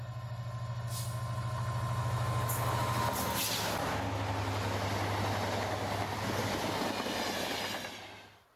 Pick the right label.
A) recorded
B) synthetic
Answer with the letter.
A